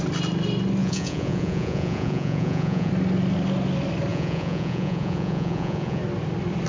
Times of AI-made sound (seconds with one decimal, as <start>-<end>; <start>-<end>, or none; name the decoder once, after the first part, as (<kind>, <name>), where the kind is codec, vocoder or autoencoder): 0.8-2.9 (vocoder, Vocos); 4.1-6.0